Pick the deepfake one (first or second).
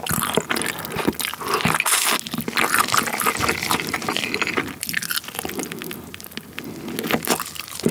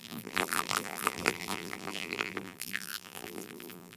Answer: second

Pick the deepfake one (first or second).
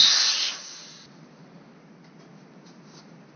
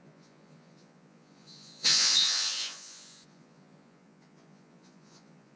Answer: second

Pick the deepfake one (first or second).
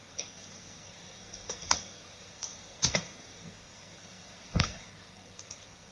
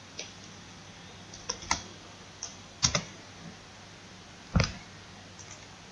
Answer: first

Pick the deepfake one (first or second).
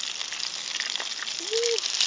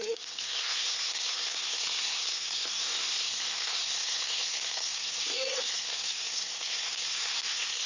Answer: second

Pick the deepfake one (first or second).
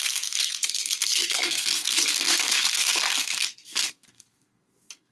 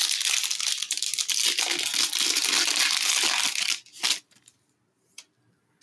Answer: first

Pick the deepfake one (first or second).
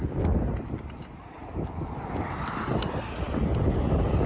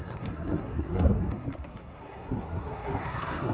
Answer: second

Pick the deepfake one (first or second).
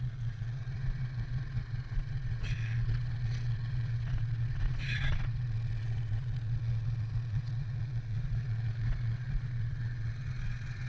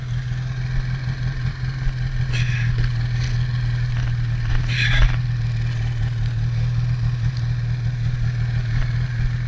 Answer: first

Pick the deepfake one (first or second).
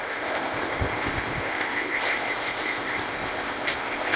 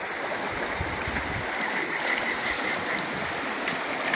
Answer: first